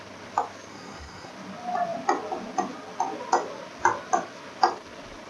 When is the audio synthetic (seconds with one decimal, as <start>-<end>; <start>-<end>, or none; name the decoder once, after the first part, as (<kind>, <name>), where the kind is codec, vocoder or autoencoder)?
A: 0.7-1.3 (codec, SNAC)

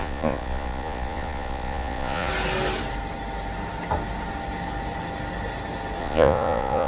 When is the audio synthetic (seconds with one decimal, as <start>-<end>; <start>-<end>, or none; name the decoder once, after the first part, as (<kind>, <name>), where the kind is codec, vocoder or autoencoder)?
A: 0.0-2.3 (vocoder, Vocos); 6.0-6.9